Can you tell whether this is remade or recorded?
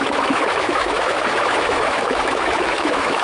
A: remade